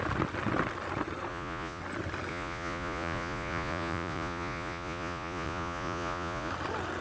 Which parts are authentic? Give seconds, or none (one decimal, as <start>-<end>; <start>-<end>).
0.0-1.3; 1.8-2.3; 6.5-7.0